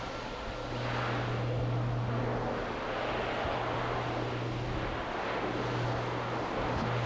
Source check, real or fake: real